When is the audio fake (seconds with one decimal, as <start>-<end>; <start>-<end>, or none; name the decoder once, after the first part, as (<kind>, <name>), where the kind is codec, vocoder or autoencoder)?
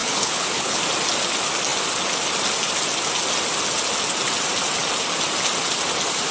0.0-0.8 (codec, HILCodec)